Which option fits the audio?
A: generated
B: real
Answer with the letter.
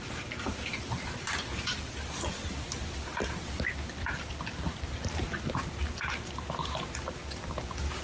A